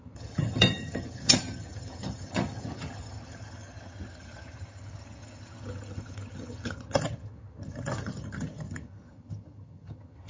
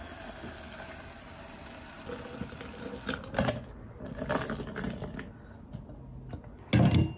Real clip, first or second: second